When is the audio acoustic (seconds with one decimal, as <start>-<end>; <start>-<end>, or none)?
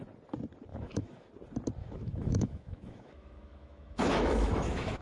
0.0-0.7; 1.3-1.8